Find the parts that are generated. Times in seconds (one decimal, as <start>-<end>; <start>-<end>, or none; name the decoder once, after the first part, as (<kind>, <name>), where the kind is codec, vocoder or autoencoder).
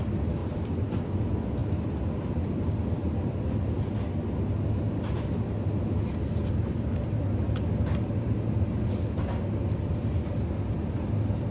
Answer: none